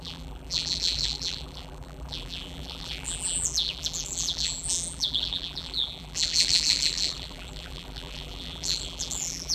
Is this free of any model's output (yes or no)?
no